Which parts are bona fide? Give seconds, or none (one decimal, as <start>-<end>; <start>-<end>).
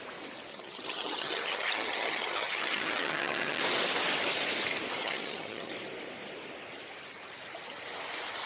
0.0-0.5; 3.6-5.0; 5.7-8.5